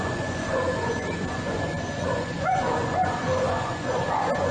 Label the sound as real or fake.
fake